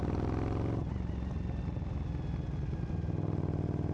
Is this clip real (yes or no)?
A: yes